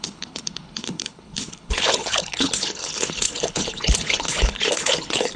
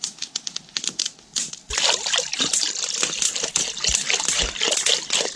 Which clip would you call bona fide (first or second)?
second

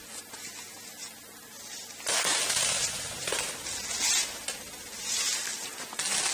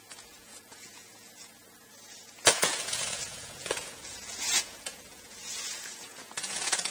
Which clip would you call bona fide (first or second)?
first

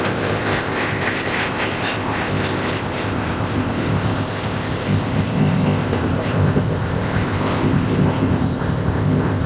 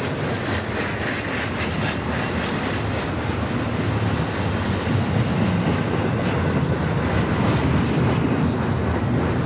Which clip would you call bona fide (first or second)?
second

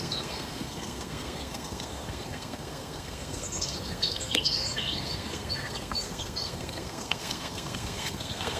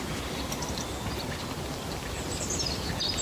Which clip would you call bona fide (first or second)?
second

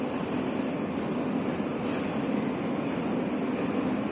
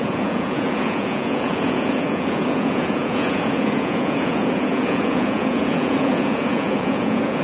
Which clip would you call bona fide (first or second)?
first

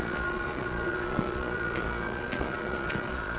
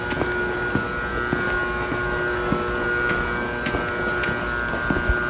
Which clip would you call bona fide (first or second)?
second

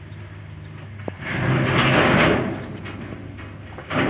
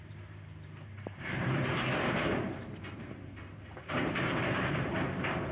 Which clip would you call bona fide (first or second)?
first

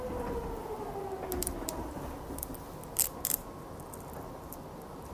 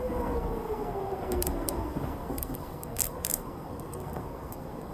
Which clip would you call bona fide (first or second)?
first